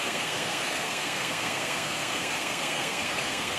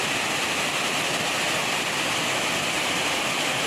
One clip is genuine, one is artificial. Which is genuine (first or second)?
second